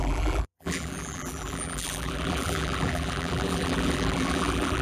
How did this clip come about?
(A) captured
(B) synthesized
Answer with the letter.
B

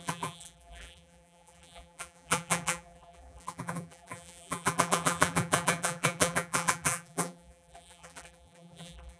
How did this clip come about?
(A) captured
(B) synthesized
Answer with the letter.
B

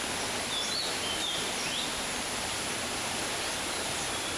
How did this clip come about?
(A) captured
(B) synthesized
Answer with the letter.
B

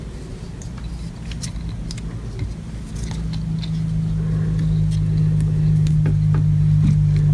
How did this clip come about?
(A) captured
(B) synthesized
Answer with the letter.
A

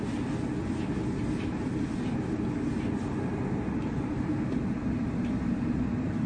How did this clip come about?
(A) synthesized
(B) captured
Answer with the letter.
B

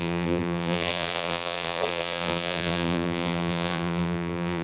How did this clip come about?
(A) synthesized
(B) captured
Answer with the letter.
A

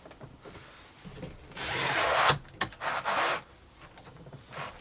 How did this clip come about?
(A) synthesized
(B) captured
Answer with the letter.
B